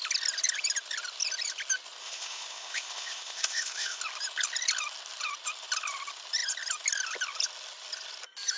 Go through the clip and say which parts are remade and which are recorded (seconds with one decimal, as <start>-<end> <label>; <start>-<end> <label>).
0.0-2.0 recorded; 2.0-4.0 remade; 4.0-8.6 recorded